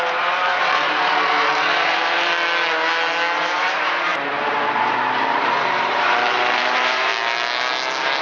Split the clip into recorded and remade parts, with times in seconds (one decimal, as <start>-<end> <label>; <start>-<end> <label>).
0.0-2.3 remade; 2.3-3.4 recorded; 3.4-4.1 remade; 4.1-4.9 recorded; 4.9-7.1 remade; 7.1-8.2 recorded